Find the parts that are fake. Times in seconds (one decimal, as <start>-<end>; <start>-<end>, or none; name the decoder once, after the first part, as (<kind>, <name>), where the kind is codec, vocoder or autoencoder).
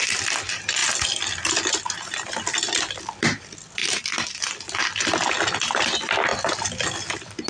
none